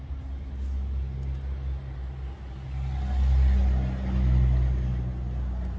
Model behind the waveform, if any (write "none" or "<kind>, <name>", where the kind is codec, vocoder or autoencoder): none